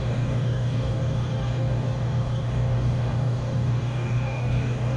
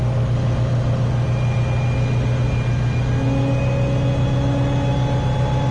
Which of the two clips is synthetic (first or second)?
first